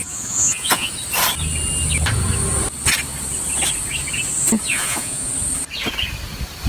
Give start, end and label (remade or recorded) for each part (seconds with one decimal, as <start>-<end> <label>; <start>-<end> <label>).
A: 0.0-0.9 remade; 0.9-4.7 recorded; 4.7-5.3 remade; 5.3-6.7 recorded